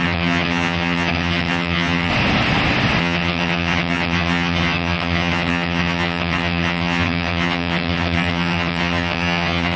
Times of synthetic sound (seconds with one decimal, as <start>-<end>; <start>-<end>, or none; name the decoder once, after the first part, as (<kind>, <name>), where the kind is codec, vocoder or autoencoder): 0.0-2.1 (vocoder, HiFi-GAN); 3.0-9.8